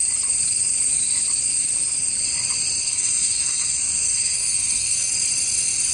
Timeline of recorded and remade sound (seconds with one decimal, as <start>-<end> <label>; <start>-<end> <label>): 0.0-2.8 recorded; 2.8-5.1 remade; 5.1-5.9 recorded